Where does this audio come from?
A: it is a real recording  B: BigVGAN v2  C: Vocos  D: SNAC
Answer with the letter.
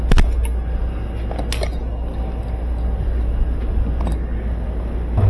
A